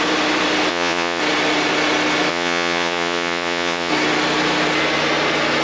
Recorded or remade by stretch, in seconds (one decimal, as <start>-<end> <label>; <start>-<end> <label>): 0.0-0.7 recorded; 0.7-1.2 remade; 1.2-2.3 recorded; 2.3-3.9 remade; 3.9-5.6 recorded